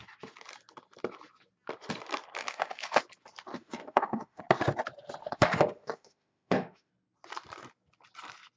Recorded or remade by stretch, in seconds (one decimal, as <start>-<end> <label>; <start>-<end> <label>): 0.0-2.4 recorded; 2.4-3.0 remade; 3.0-3.5 recorded; 3.5-4.4 remade; 4.4-5.2 recorded; 5.2-6.9 remade; 6.9-8.6 recorded